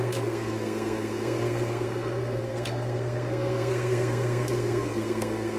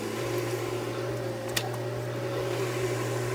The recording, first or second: second